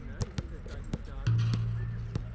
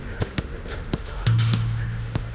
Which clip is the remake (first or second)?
second